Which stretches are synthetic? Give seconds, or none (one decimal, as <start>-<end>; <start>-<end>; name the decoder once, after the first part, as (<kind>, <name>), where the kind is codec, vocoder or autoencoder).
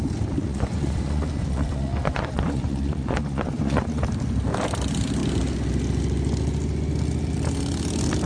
0.4-4.0 (vocoder, Vocos)